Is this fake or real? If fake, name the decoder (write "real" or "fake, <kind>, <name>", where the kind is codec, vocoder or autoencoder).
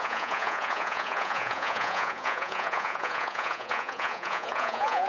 fake, vocoder, Vocos